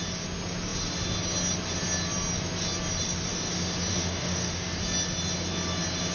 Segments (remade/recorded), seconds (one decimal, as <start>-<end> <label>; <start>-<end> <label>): 0.0-3.9 recorded; 3.9-4.5 remade; 4.5-6.1 recorded